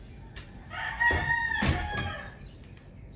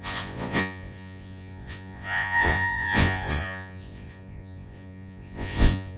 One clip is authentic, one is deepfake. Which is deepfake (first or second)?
second